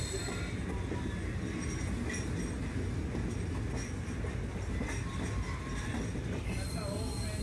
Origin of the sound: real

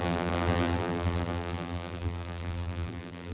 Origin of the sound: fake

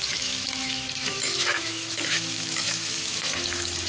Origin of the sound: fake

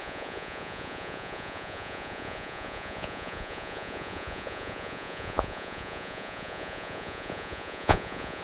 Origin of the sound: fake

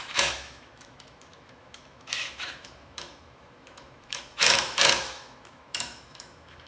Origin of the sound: fake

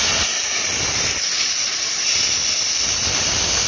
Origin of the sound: real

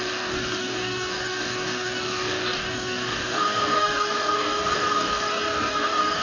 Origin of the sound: fake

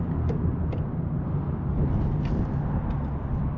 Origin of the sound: fake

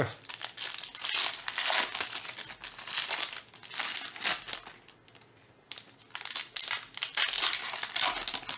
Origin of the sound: real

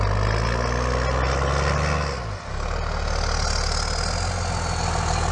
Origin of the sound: real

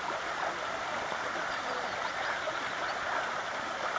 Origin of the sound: real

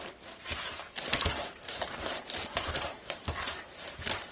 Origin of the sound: fake